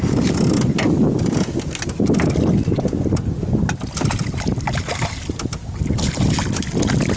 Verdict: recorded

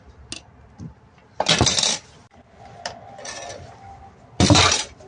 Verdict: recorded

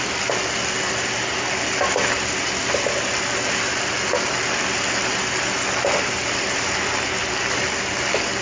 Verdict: recorded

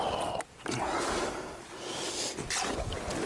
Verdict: recorded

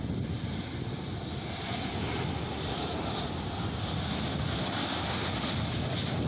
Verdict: recorded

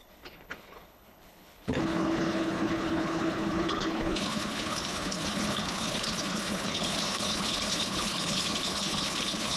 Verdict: remade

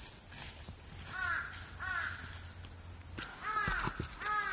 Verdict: recorded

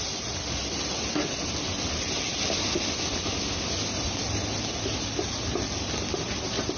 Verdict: recorded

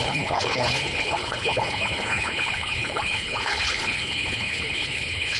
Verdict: remade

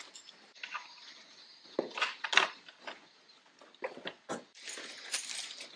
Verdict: recorded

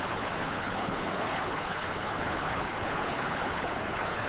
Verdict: remade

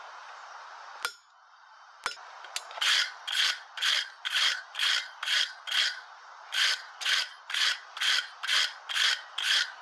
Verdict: recorded